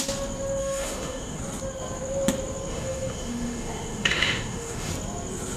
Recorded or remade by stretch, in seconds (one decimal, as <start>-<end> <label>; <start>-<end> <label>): 0.0-0.6 recorded; 0.6-1.4 remade; 1.4-2.7 recorded; 2.7-4.9 remade; 4.9-5.6 recorded

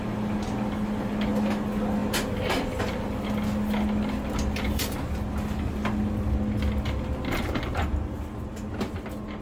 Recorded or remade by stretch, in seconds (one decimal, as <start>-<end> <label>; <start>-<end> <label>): 0.0-9.4 recorded

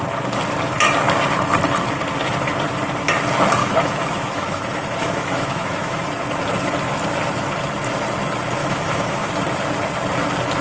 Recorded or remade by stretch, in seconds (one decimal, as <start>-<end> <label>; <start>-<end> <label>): 0.0-3.6 recorded; 3.6-6.1 remade; 6.1-8.6 recorded; 8.6-9.3 remade; 9.3-10.6 recorded

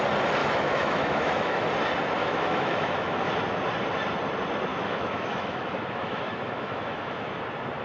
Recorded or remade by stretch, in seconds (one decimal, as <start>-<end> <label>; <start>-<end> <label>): 0.0-0.4 recorded; 0.4-1.7 remade; 1.7-2.2 recorded; 2.2-3.2 remade; 3.2-4.7 recorded; 4.7-7.3 remade; 7.3-7.8 recorded

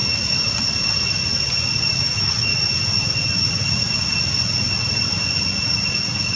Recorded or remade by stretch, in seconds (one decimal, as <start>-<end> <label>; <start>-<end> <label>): 0.0-2.0 recorded; 2.0-2.5 remade; 2.5-6.4 recorded

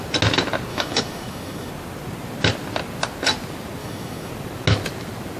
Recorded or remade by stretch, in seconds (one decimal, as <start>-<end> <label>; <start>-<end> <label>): 0.0-0.7 recorded; 0.7-1.7 remade; 1.7-3.8 recorded; 3.8-4.3 remade; 4.3-5.4 recorded